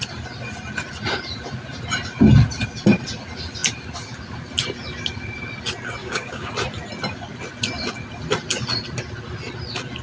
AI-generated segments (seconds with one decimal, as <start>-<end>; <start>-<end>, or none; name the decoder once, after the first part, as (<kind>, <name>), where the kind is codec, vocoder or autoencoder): 6.0-6.5 (codec, DAC)